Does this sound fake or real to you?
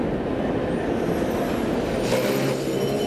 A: real